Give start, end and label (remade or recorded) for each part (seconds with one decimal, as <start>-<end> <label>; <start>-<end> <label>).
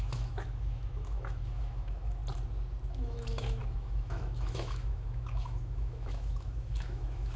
0.0-2.2 remade; 2.2-2.9 recorded; 2.9-7.4 remade